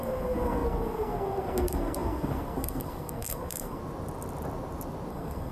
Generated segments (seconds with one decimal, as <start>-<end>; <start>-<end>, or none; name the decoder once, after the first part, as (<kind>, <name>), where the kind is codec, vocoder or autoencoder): 0.0-3.8 (codec, SNAC); 5.1-5.5